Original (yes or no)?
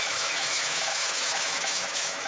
no